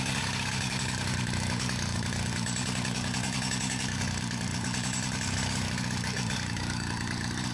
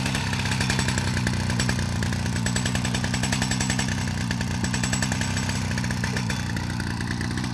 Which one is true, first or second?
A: second